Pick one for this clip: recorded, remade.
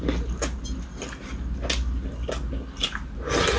recorded